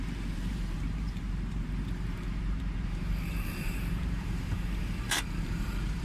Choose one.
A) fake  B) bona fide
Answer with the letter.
A